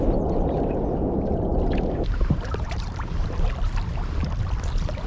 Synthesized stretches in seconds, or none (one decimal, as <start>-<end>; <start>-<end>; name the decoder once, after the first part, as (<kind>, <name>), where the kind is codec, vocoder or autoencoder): 1.5-3.5 (vocoder, BigVGAN v2)